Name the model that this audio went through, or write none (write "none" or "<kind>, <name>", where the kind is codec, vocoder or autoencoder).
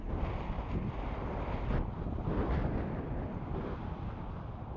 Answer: none